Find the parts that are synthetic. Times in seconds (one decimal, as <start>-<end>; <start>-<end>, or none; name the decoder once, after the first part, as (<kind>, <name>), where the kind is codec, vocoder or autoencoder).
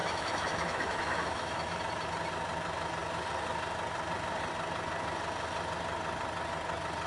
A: 0.0-1.8 (autoencoder, DAC-VAE)